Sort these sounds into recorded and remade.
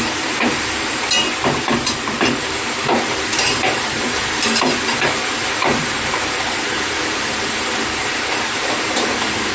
remade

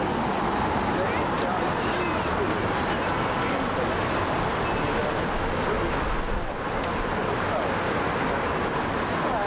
recorded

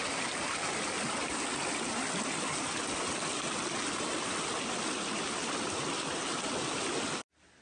recorded